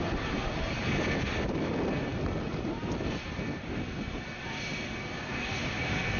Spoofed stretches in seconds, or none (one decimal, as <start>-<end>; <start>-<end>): none